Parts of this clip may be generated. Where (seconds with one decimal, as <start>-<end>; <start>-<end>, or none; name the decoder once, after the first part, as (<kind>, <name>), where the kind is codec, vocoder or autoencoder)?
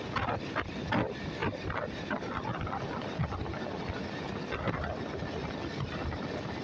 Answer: none